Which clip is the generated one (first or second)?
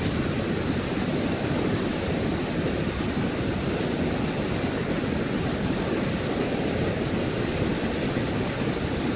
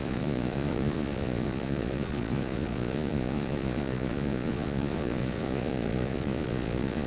second